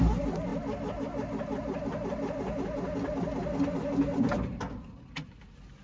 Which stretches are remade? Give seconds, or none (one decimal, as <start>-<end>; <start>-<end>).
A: none